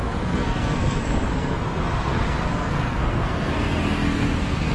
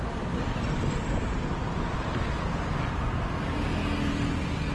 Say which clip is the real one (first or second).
second